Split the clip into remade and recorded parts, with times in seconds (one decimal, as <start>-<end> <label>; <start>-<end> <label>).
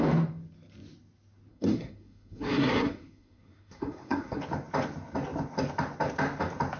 0.0-1.5 recorded; 1.5-4.4 remade; 4.4-6.8 recorded